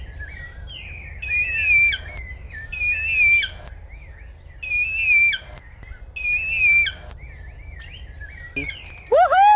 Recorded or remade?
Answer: recorded